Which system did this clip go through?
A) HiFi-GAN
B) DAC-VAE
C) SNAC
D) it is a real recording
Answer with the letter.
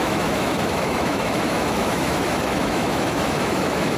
B